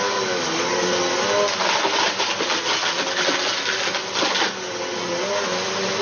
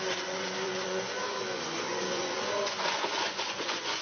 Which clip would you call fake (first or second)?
second